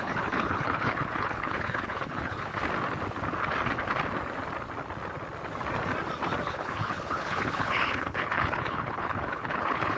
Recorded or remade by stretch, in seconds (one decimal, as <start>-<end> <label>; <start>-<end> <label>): 0.0-2.5 remade; 2.5-6.5 recorded; 6.5-10.0 remade